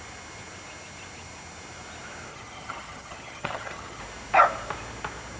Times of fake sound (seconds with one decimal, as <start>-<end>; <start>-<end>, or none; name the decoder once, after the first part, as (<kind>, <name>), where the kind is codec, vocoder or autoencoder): 2.3-4.0 (vocoder, HiFi-GAN)